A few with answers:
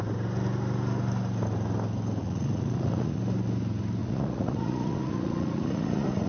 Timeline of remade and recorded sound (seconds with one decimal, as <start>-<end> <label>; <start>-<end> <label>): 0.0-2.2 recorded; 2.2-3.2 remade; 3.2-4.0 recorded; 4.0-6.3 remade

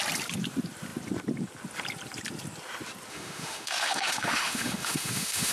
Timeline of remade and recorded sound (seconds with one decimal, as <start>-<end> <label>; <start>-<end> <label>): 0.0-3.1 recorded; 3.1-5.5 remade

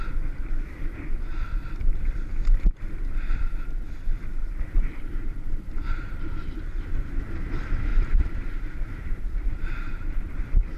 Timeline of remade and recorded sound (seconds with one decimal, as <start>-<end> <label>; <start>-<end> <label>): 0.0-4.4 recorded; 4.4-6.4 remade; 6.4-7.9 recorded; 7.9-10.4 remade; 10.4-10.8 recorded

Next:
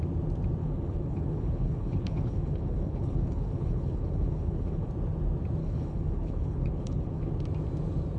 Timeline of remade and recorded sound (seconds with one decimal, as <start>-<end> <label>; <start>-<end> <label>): 0.0-0.6 recorded; 0.6-4.9 remade; 4.9-5.6 recorded; 5.6-7.3 remade; 7.3-8.2 recorded

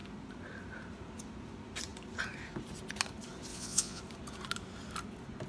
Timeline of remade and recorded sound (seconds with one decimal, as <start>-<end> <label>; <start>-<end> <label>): 0.0-3.5 recorded; 3.5-4.0 remade; 4.0-5.5 recorded

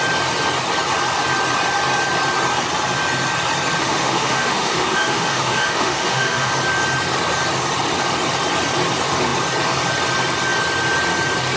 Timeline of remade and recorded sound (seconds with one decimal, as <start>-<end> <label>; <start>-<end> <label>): 0.0-3.8 recorded; 3.8-6.5 remade; 6.5-11.6 recorded

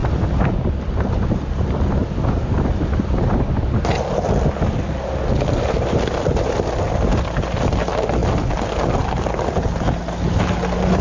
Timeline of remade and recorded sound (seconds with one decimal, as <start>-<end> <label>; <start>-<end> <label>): 0.0-11.0 recorded